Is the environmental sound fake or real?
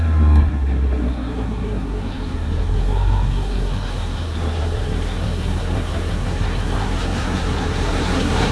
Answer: fake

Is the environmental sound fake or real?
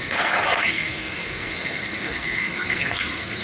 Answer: fake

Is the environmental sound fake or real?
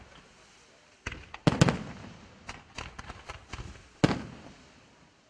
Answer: real